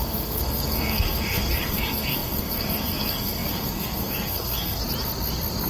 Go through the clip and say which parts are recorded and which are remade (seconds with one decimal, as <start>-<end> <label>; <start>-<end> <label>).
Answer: 0.0-4.8 remade; 4.8-5.7 recorded